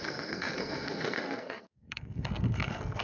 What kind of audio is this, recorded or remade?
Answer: remade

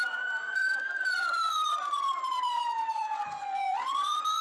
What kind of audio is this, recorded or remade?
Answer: remade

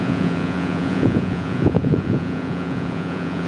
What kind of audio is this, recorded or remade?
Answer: remade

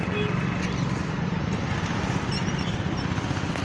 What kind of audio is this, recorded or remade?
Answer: recorded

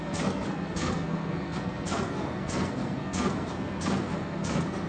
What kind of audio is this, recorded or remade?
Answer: remade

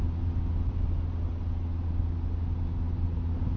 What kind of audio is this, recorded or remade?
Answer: recorded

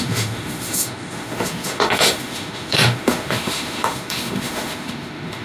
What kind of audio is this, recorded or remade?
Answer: remade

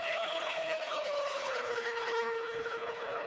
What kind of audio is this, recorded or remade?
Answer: remade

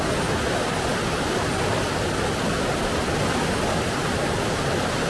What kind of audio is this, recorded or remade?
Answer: recorded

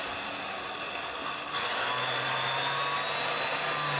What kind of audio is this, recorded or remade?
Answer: recorded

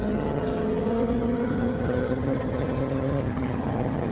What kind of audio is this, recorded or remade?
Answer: remade